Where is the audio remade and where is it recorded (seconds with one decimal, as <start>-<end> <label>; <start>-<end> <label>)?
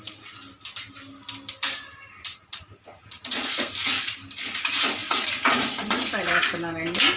0.0-2.3 recorded; 2.3-3.7 remade; 3.7-5.0 recorded; 5.0-6.5 remade; 6.5-7.2 recorded